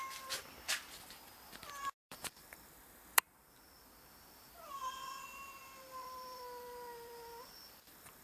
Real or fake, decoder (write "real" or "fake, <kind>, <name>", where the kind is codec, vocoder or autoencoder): fake, vocoder, BigVGAN v2